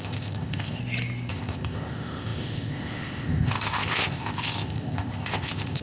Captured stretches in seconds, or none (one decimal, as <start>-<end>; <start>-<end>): 0.8-1.3